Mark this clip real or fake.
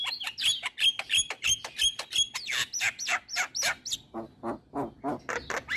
real